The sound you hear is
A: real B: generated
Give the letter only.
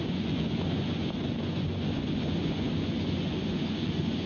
B